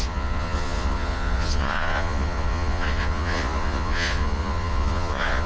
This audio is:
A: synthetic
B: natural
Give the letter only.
A